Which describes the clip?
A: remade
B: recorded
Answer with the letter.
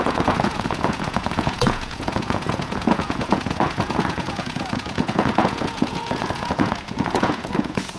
A